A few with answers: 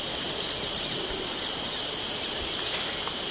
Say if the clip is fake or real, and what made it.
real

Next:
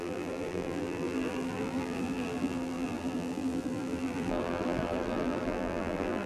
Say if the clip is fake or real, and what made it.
fake, vocoder, BigVGAN v2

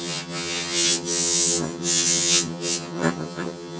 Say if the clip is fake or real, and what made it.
fake, vocoder, HiFi-GAN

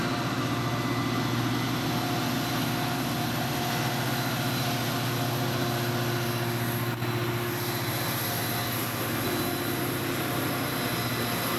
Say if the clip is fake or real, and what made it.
real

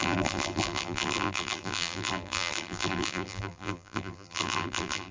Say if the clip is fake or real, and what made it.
fake, vocoder, BigVGAN v2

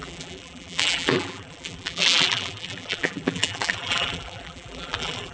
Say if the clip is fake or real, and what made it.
fake, vocoder, BigVGAN v2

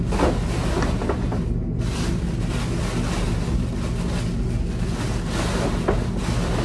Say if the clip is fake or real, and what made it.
real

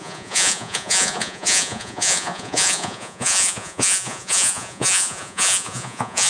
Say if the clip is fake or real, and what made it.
fake, vocoder, Vocos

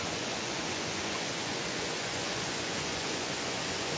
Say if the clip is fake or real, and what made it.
fake, vocoder, Vocos